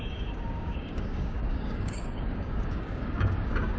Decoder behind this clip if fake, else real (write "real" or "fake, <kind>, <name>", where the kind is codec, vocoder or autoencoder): fake, codec, DAC